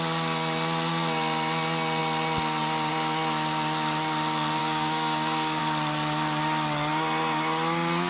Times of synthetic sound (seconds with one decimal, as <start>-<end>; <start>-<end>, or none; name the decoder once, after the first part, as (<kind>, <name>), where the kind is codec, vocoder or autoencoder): 4.6-5.6 (codec, DAC)